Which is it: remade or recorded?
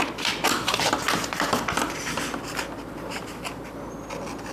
recorded